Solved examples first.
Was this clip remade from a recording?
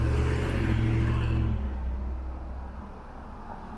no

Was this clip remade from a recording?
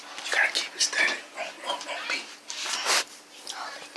no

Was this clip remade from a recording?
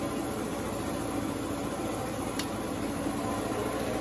no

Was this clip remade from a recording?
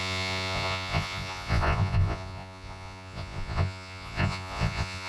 yes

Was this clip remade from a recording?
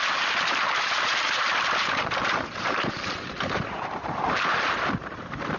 yes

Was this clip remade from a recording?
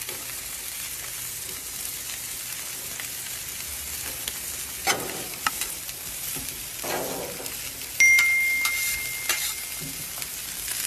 no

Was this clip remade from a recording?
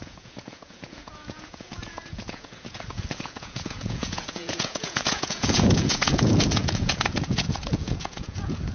yes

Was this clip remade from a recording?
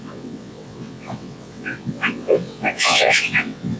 yes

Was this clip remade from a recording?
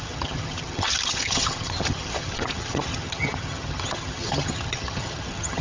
yes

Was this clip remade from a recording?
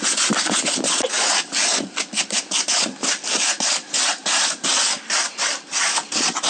no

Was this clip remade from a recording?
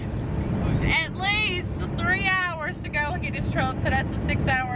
no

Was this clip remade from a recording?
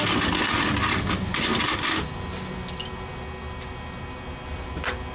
no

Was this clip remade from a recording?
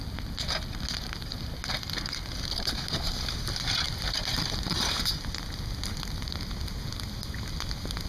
no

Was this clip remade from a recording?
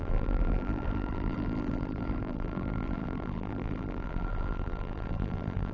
yes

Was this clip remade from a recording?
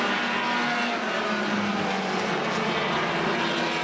no